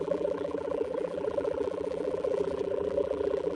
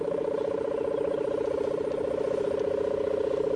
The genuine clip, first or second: second